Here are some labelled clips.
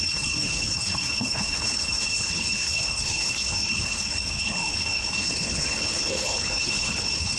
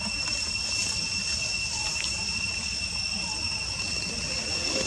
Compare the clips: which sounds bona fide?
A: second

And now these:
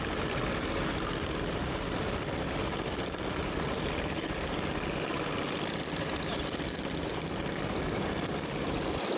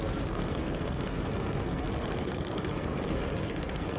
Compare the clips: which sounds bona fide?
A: first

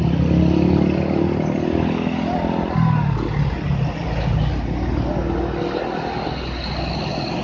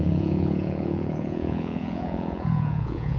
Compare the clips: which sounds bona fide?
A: first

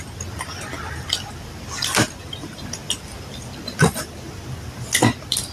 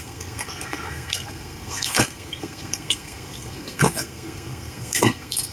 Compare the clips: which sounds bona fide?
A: first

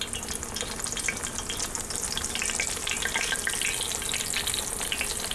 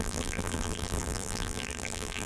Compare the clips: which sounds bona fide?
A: first